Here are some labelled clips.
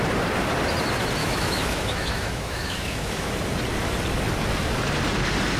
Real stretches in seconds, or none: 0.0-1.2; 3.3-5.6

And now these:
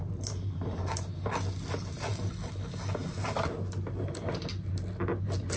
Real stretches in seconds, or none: 0.0-5.6

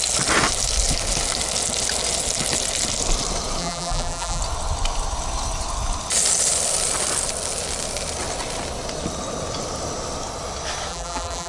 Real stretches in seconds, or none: 0.0-3.6; 4.4-10.9

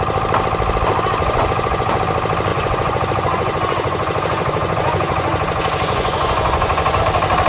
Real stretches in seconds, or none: 0.0-1.2; 2.0-2.5; 7.0-7.5

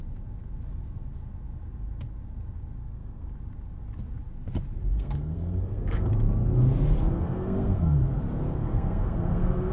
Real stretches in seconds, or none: 0.0-2.8; 3.3-4.9; 6.1-7.1; 8.2-8.6